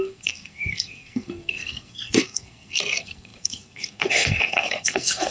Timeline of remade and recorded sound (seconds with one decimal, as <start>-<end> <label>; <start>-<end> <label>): 0.0-5.3 remade